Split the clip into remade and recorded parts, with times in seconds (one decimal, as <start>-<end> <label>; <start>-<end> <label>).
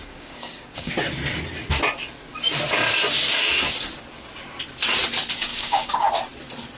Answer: 0.0-0.9 remade; 0.9-5.5 recorded; 5.5-6.1 remade; 6.1-6.8 recorded